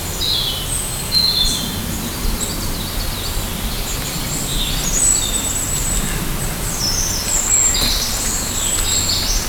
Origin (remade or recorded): recorded